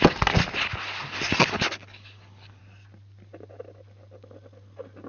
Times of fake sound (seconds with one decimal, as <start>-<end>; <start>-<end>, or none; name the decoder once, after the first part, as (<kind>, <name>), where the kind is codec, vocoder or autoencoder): 1.0-2.6 (codec, DAC)